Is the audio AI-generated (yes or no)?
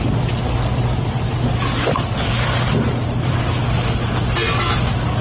no